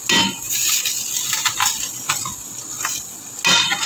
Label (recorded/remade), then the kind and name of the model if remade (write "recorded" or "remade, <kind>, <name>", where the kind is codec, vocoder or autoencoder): recorded